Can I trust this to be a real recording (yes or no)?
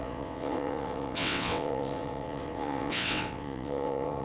no